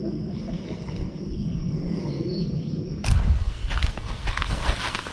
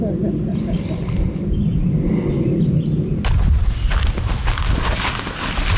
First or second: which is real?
second